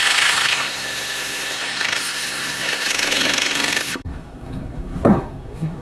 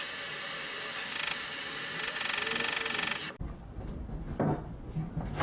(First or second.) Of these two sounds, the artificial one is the first